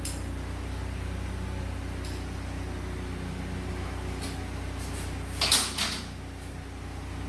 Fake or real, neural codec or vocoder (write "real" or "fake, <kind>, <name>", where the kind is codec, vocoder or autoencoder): real